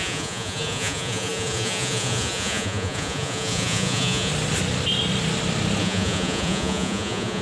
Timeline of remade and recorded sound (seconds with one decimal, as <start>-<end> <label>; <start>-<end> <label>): 0.0-4.3 remade; 4.3-5.8 recorded; 5.8-7.4 remade